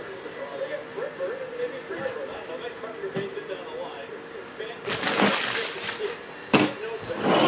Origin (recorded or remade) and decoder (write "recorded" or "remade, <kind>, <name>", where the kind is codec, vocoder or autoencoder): recorded